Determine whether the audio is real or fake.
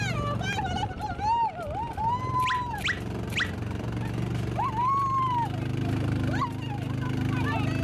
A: real